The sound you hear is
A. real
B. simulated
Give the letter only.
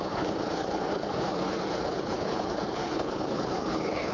B